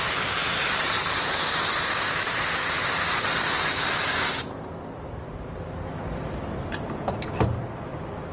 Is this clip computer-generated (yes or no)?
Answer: no